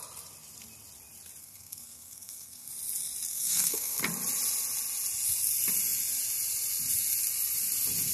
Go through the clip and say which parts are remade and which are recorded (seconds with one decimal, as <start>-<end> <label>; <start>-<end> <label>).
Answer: 0.0-1.4 recorded; 1.4-2.7 remade; 2.7-3.3 recorded; 3.3-4.0 remade; 4.0-8.1 recorded